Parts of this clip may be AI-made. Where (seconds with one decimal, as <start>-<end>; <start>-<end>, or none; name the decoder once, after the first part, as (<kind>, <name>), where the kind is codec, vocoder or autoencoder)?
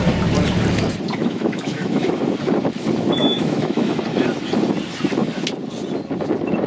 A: 1.2-2.2 (autoencoder, DAC-VAE); 3.2-4.0